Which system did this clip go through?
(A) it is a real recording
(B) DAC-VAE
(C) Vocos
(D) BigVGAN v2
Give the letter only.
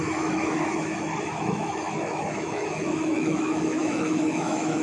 B